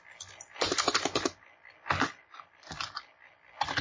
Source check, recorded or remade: recorded